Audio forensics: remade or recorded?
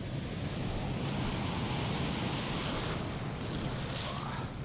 recorded